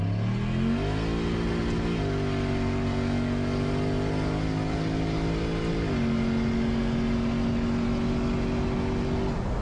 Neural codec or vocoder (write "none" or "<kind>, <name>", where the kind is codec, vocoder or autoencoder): none